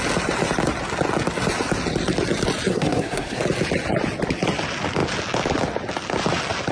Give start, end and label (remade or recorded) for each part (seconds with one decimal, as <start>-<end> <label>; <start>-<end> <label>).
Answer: 0.0-2.7 recorded; 2.7-3.4 remade; 3.4-6.7 recorded